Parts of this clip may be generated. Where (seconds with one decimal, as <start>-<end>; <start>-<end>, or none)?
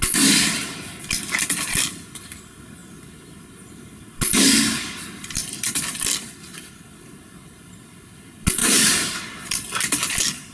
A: 8.6-9.2